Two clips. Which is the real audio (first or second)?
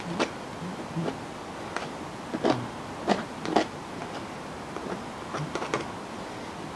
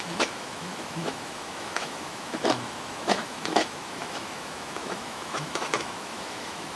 first